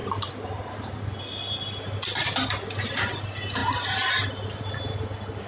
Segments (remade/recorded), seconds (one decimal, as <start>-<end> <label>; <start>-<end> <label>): 0.0-1.2 remade; 1.2-5.5 recorded